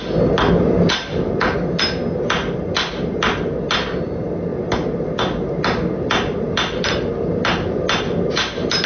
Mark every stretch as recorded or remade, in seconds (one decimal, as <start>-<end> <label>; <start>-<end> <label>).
0.0-8.9 recorded